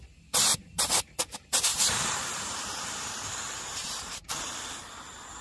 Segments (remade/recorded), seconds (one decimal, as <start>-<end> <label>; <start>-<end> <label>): 0.0-1.7 recorded; 1.7-4.9 remade; 4.9-5.4 recorded